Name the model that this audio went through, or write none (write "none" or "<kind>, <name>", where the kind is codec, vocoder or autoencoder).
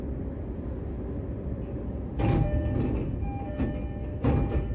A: none